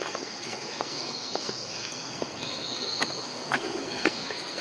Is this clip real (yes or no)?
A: no